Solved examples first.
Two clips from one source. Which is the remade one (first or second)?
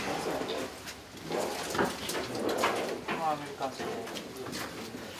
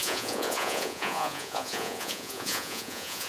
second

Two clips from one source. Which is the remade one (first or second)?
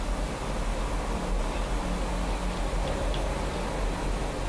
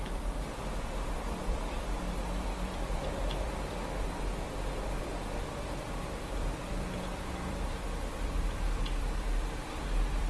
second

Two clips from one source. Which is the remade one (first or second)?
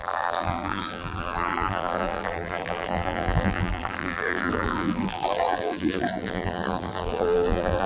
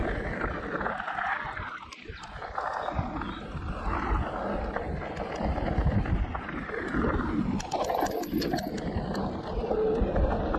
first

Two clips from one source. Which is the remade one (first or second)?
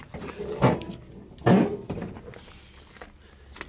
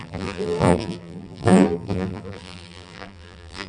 second